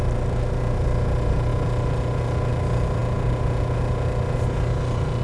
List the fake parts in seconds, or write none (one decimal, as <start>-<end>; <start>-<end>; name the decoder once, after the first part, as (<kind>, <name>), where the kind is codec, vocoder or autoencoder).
none